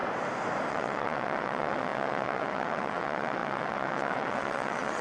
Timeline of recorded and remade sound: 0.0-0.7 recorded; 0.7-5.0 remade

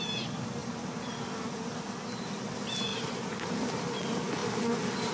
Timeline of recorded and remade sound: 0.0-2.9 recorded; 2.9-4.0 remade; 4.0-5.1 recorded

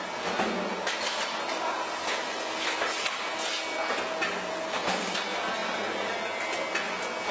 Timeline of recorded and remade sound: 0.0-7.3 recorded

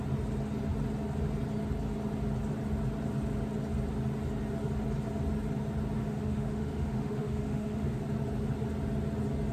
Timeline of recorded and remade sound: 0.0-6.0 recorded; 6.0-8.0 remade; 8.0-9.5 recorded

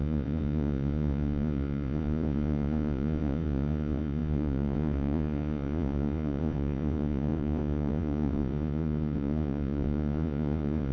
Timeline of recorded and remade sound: 0.0-10.9 remade

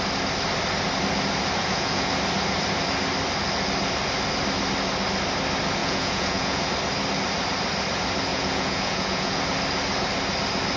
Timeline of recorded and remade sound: 0.0-1.6 recorded; 1.6-2.1 remade; 2.1-5.8 recorded; 5.8-6.7 remade; 6.7-8.3 recorded; 8.3-9.4 remade; 9.4-10.8 recorded

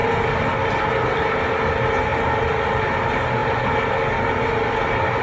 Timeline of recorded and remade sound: 0.0-3.4 recorded; 3.4-5.2 remade